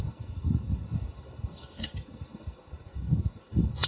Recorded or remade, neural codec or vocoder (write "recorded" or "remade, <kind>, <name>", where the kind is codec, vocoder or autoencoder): remade, codec, SNAC